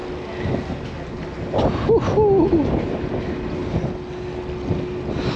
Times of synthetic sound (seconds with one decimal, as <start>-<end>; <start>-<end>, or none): none